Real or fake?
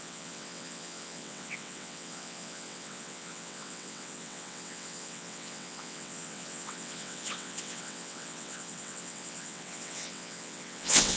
fake